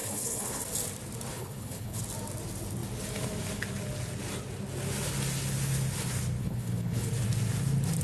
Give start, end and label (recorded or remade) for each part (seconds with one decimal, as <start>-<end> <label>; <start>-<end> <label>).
0.0-0.6 remade; 0.6-1.3 recorded; 1.3-2.0 remade; 2.0-6.4 recorded; 6.4-7.1 remade; 7.1-8.0 recorded